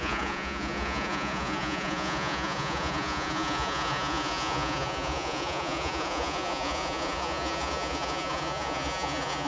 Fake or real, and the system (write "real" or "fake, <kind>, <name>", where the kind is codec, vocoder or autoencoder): fake, vocoder, Vocos